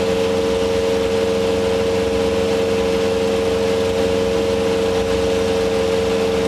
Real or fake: real